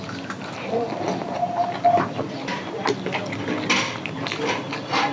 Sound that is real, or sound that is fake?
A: real